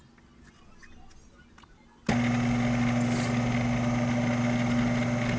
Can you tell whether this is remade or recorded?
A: recorded